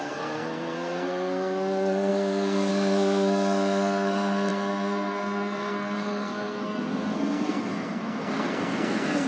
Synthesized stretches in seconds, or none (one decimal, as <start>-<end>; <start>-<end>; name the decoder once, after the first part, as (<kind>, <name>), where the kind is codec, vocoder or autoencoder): 0.0-9.3 (codec, SNAC)